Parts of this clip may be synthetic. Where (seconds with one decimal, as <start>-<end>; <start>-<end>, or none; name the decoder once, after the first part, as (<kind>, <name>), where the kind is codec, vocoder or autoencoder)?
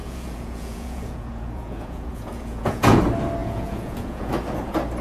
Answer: 0.0-3.0 (vocoder, Vocos); 3.4-4.3